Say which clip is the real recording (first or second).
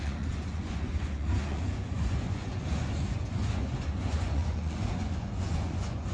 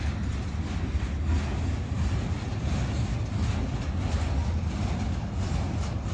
second